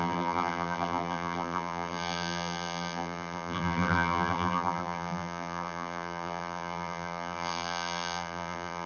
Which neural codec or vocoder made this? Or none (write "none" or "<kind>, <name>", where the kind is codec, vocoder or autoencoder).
vocoder, BigVGAN v2